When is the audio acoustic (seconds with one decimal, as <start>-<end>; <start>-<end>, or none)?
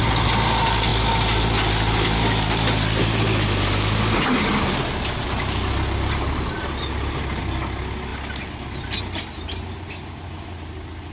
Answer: 0.0-11.1